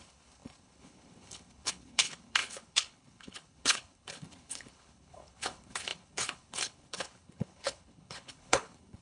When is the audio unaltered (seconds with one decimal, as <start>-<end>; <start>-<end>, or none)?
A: none